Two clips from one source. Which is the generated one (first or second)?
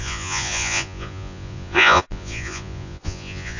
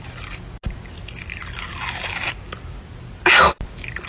first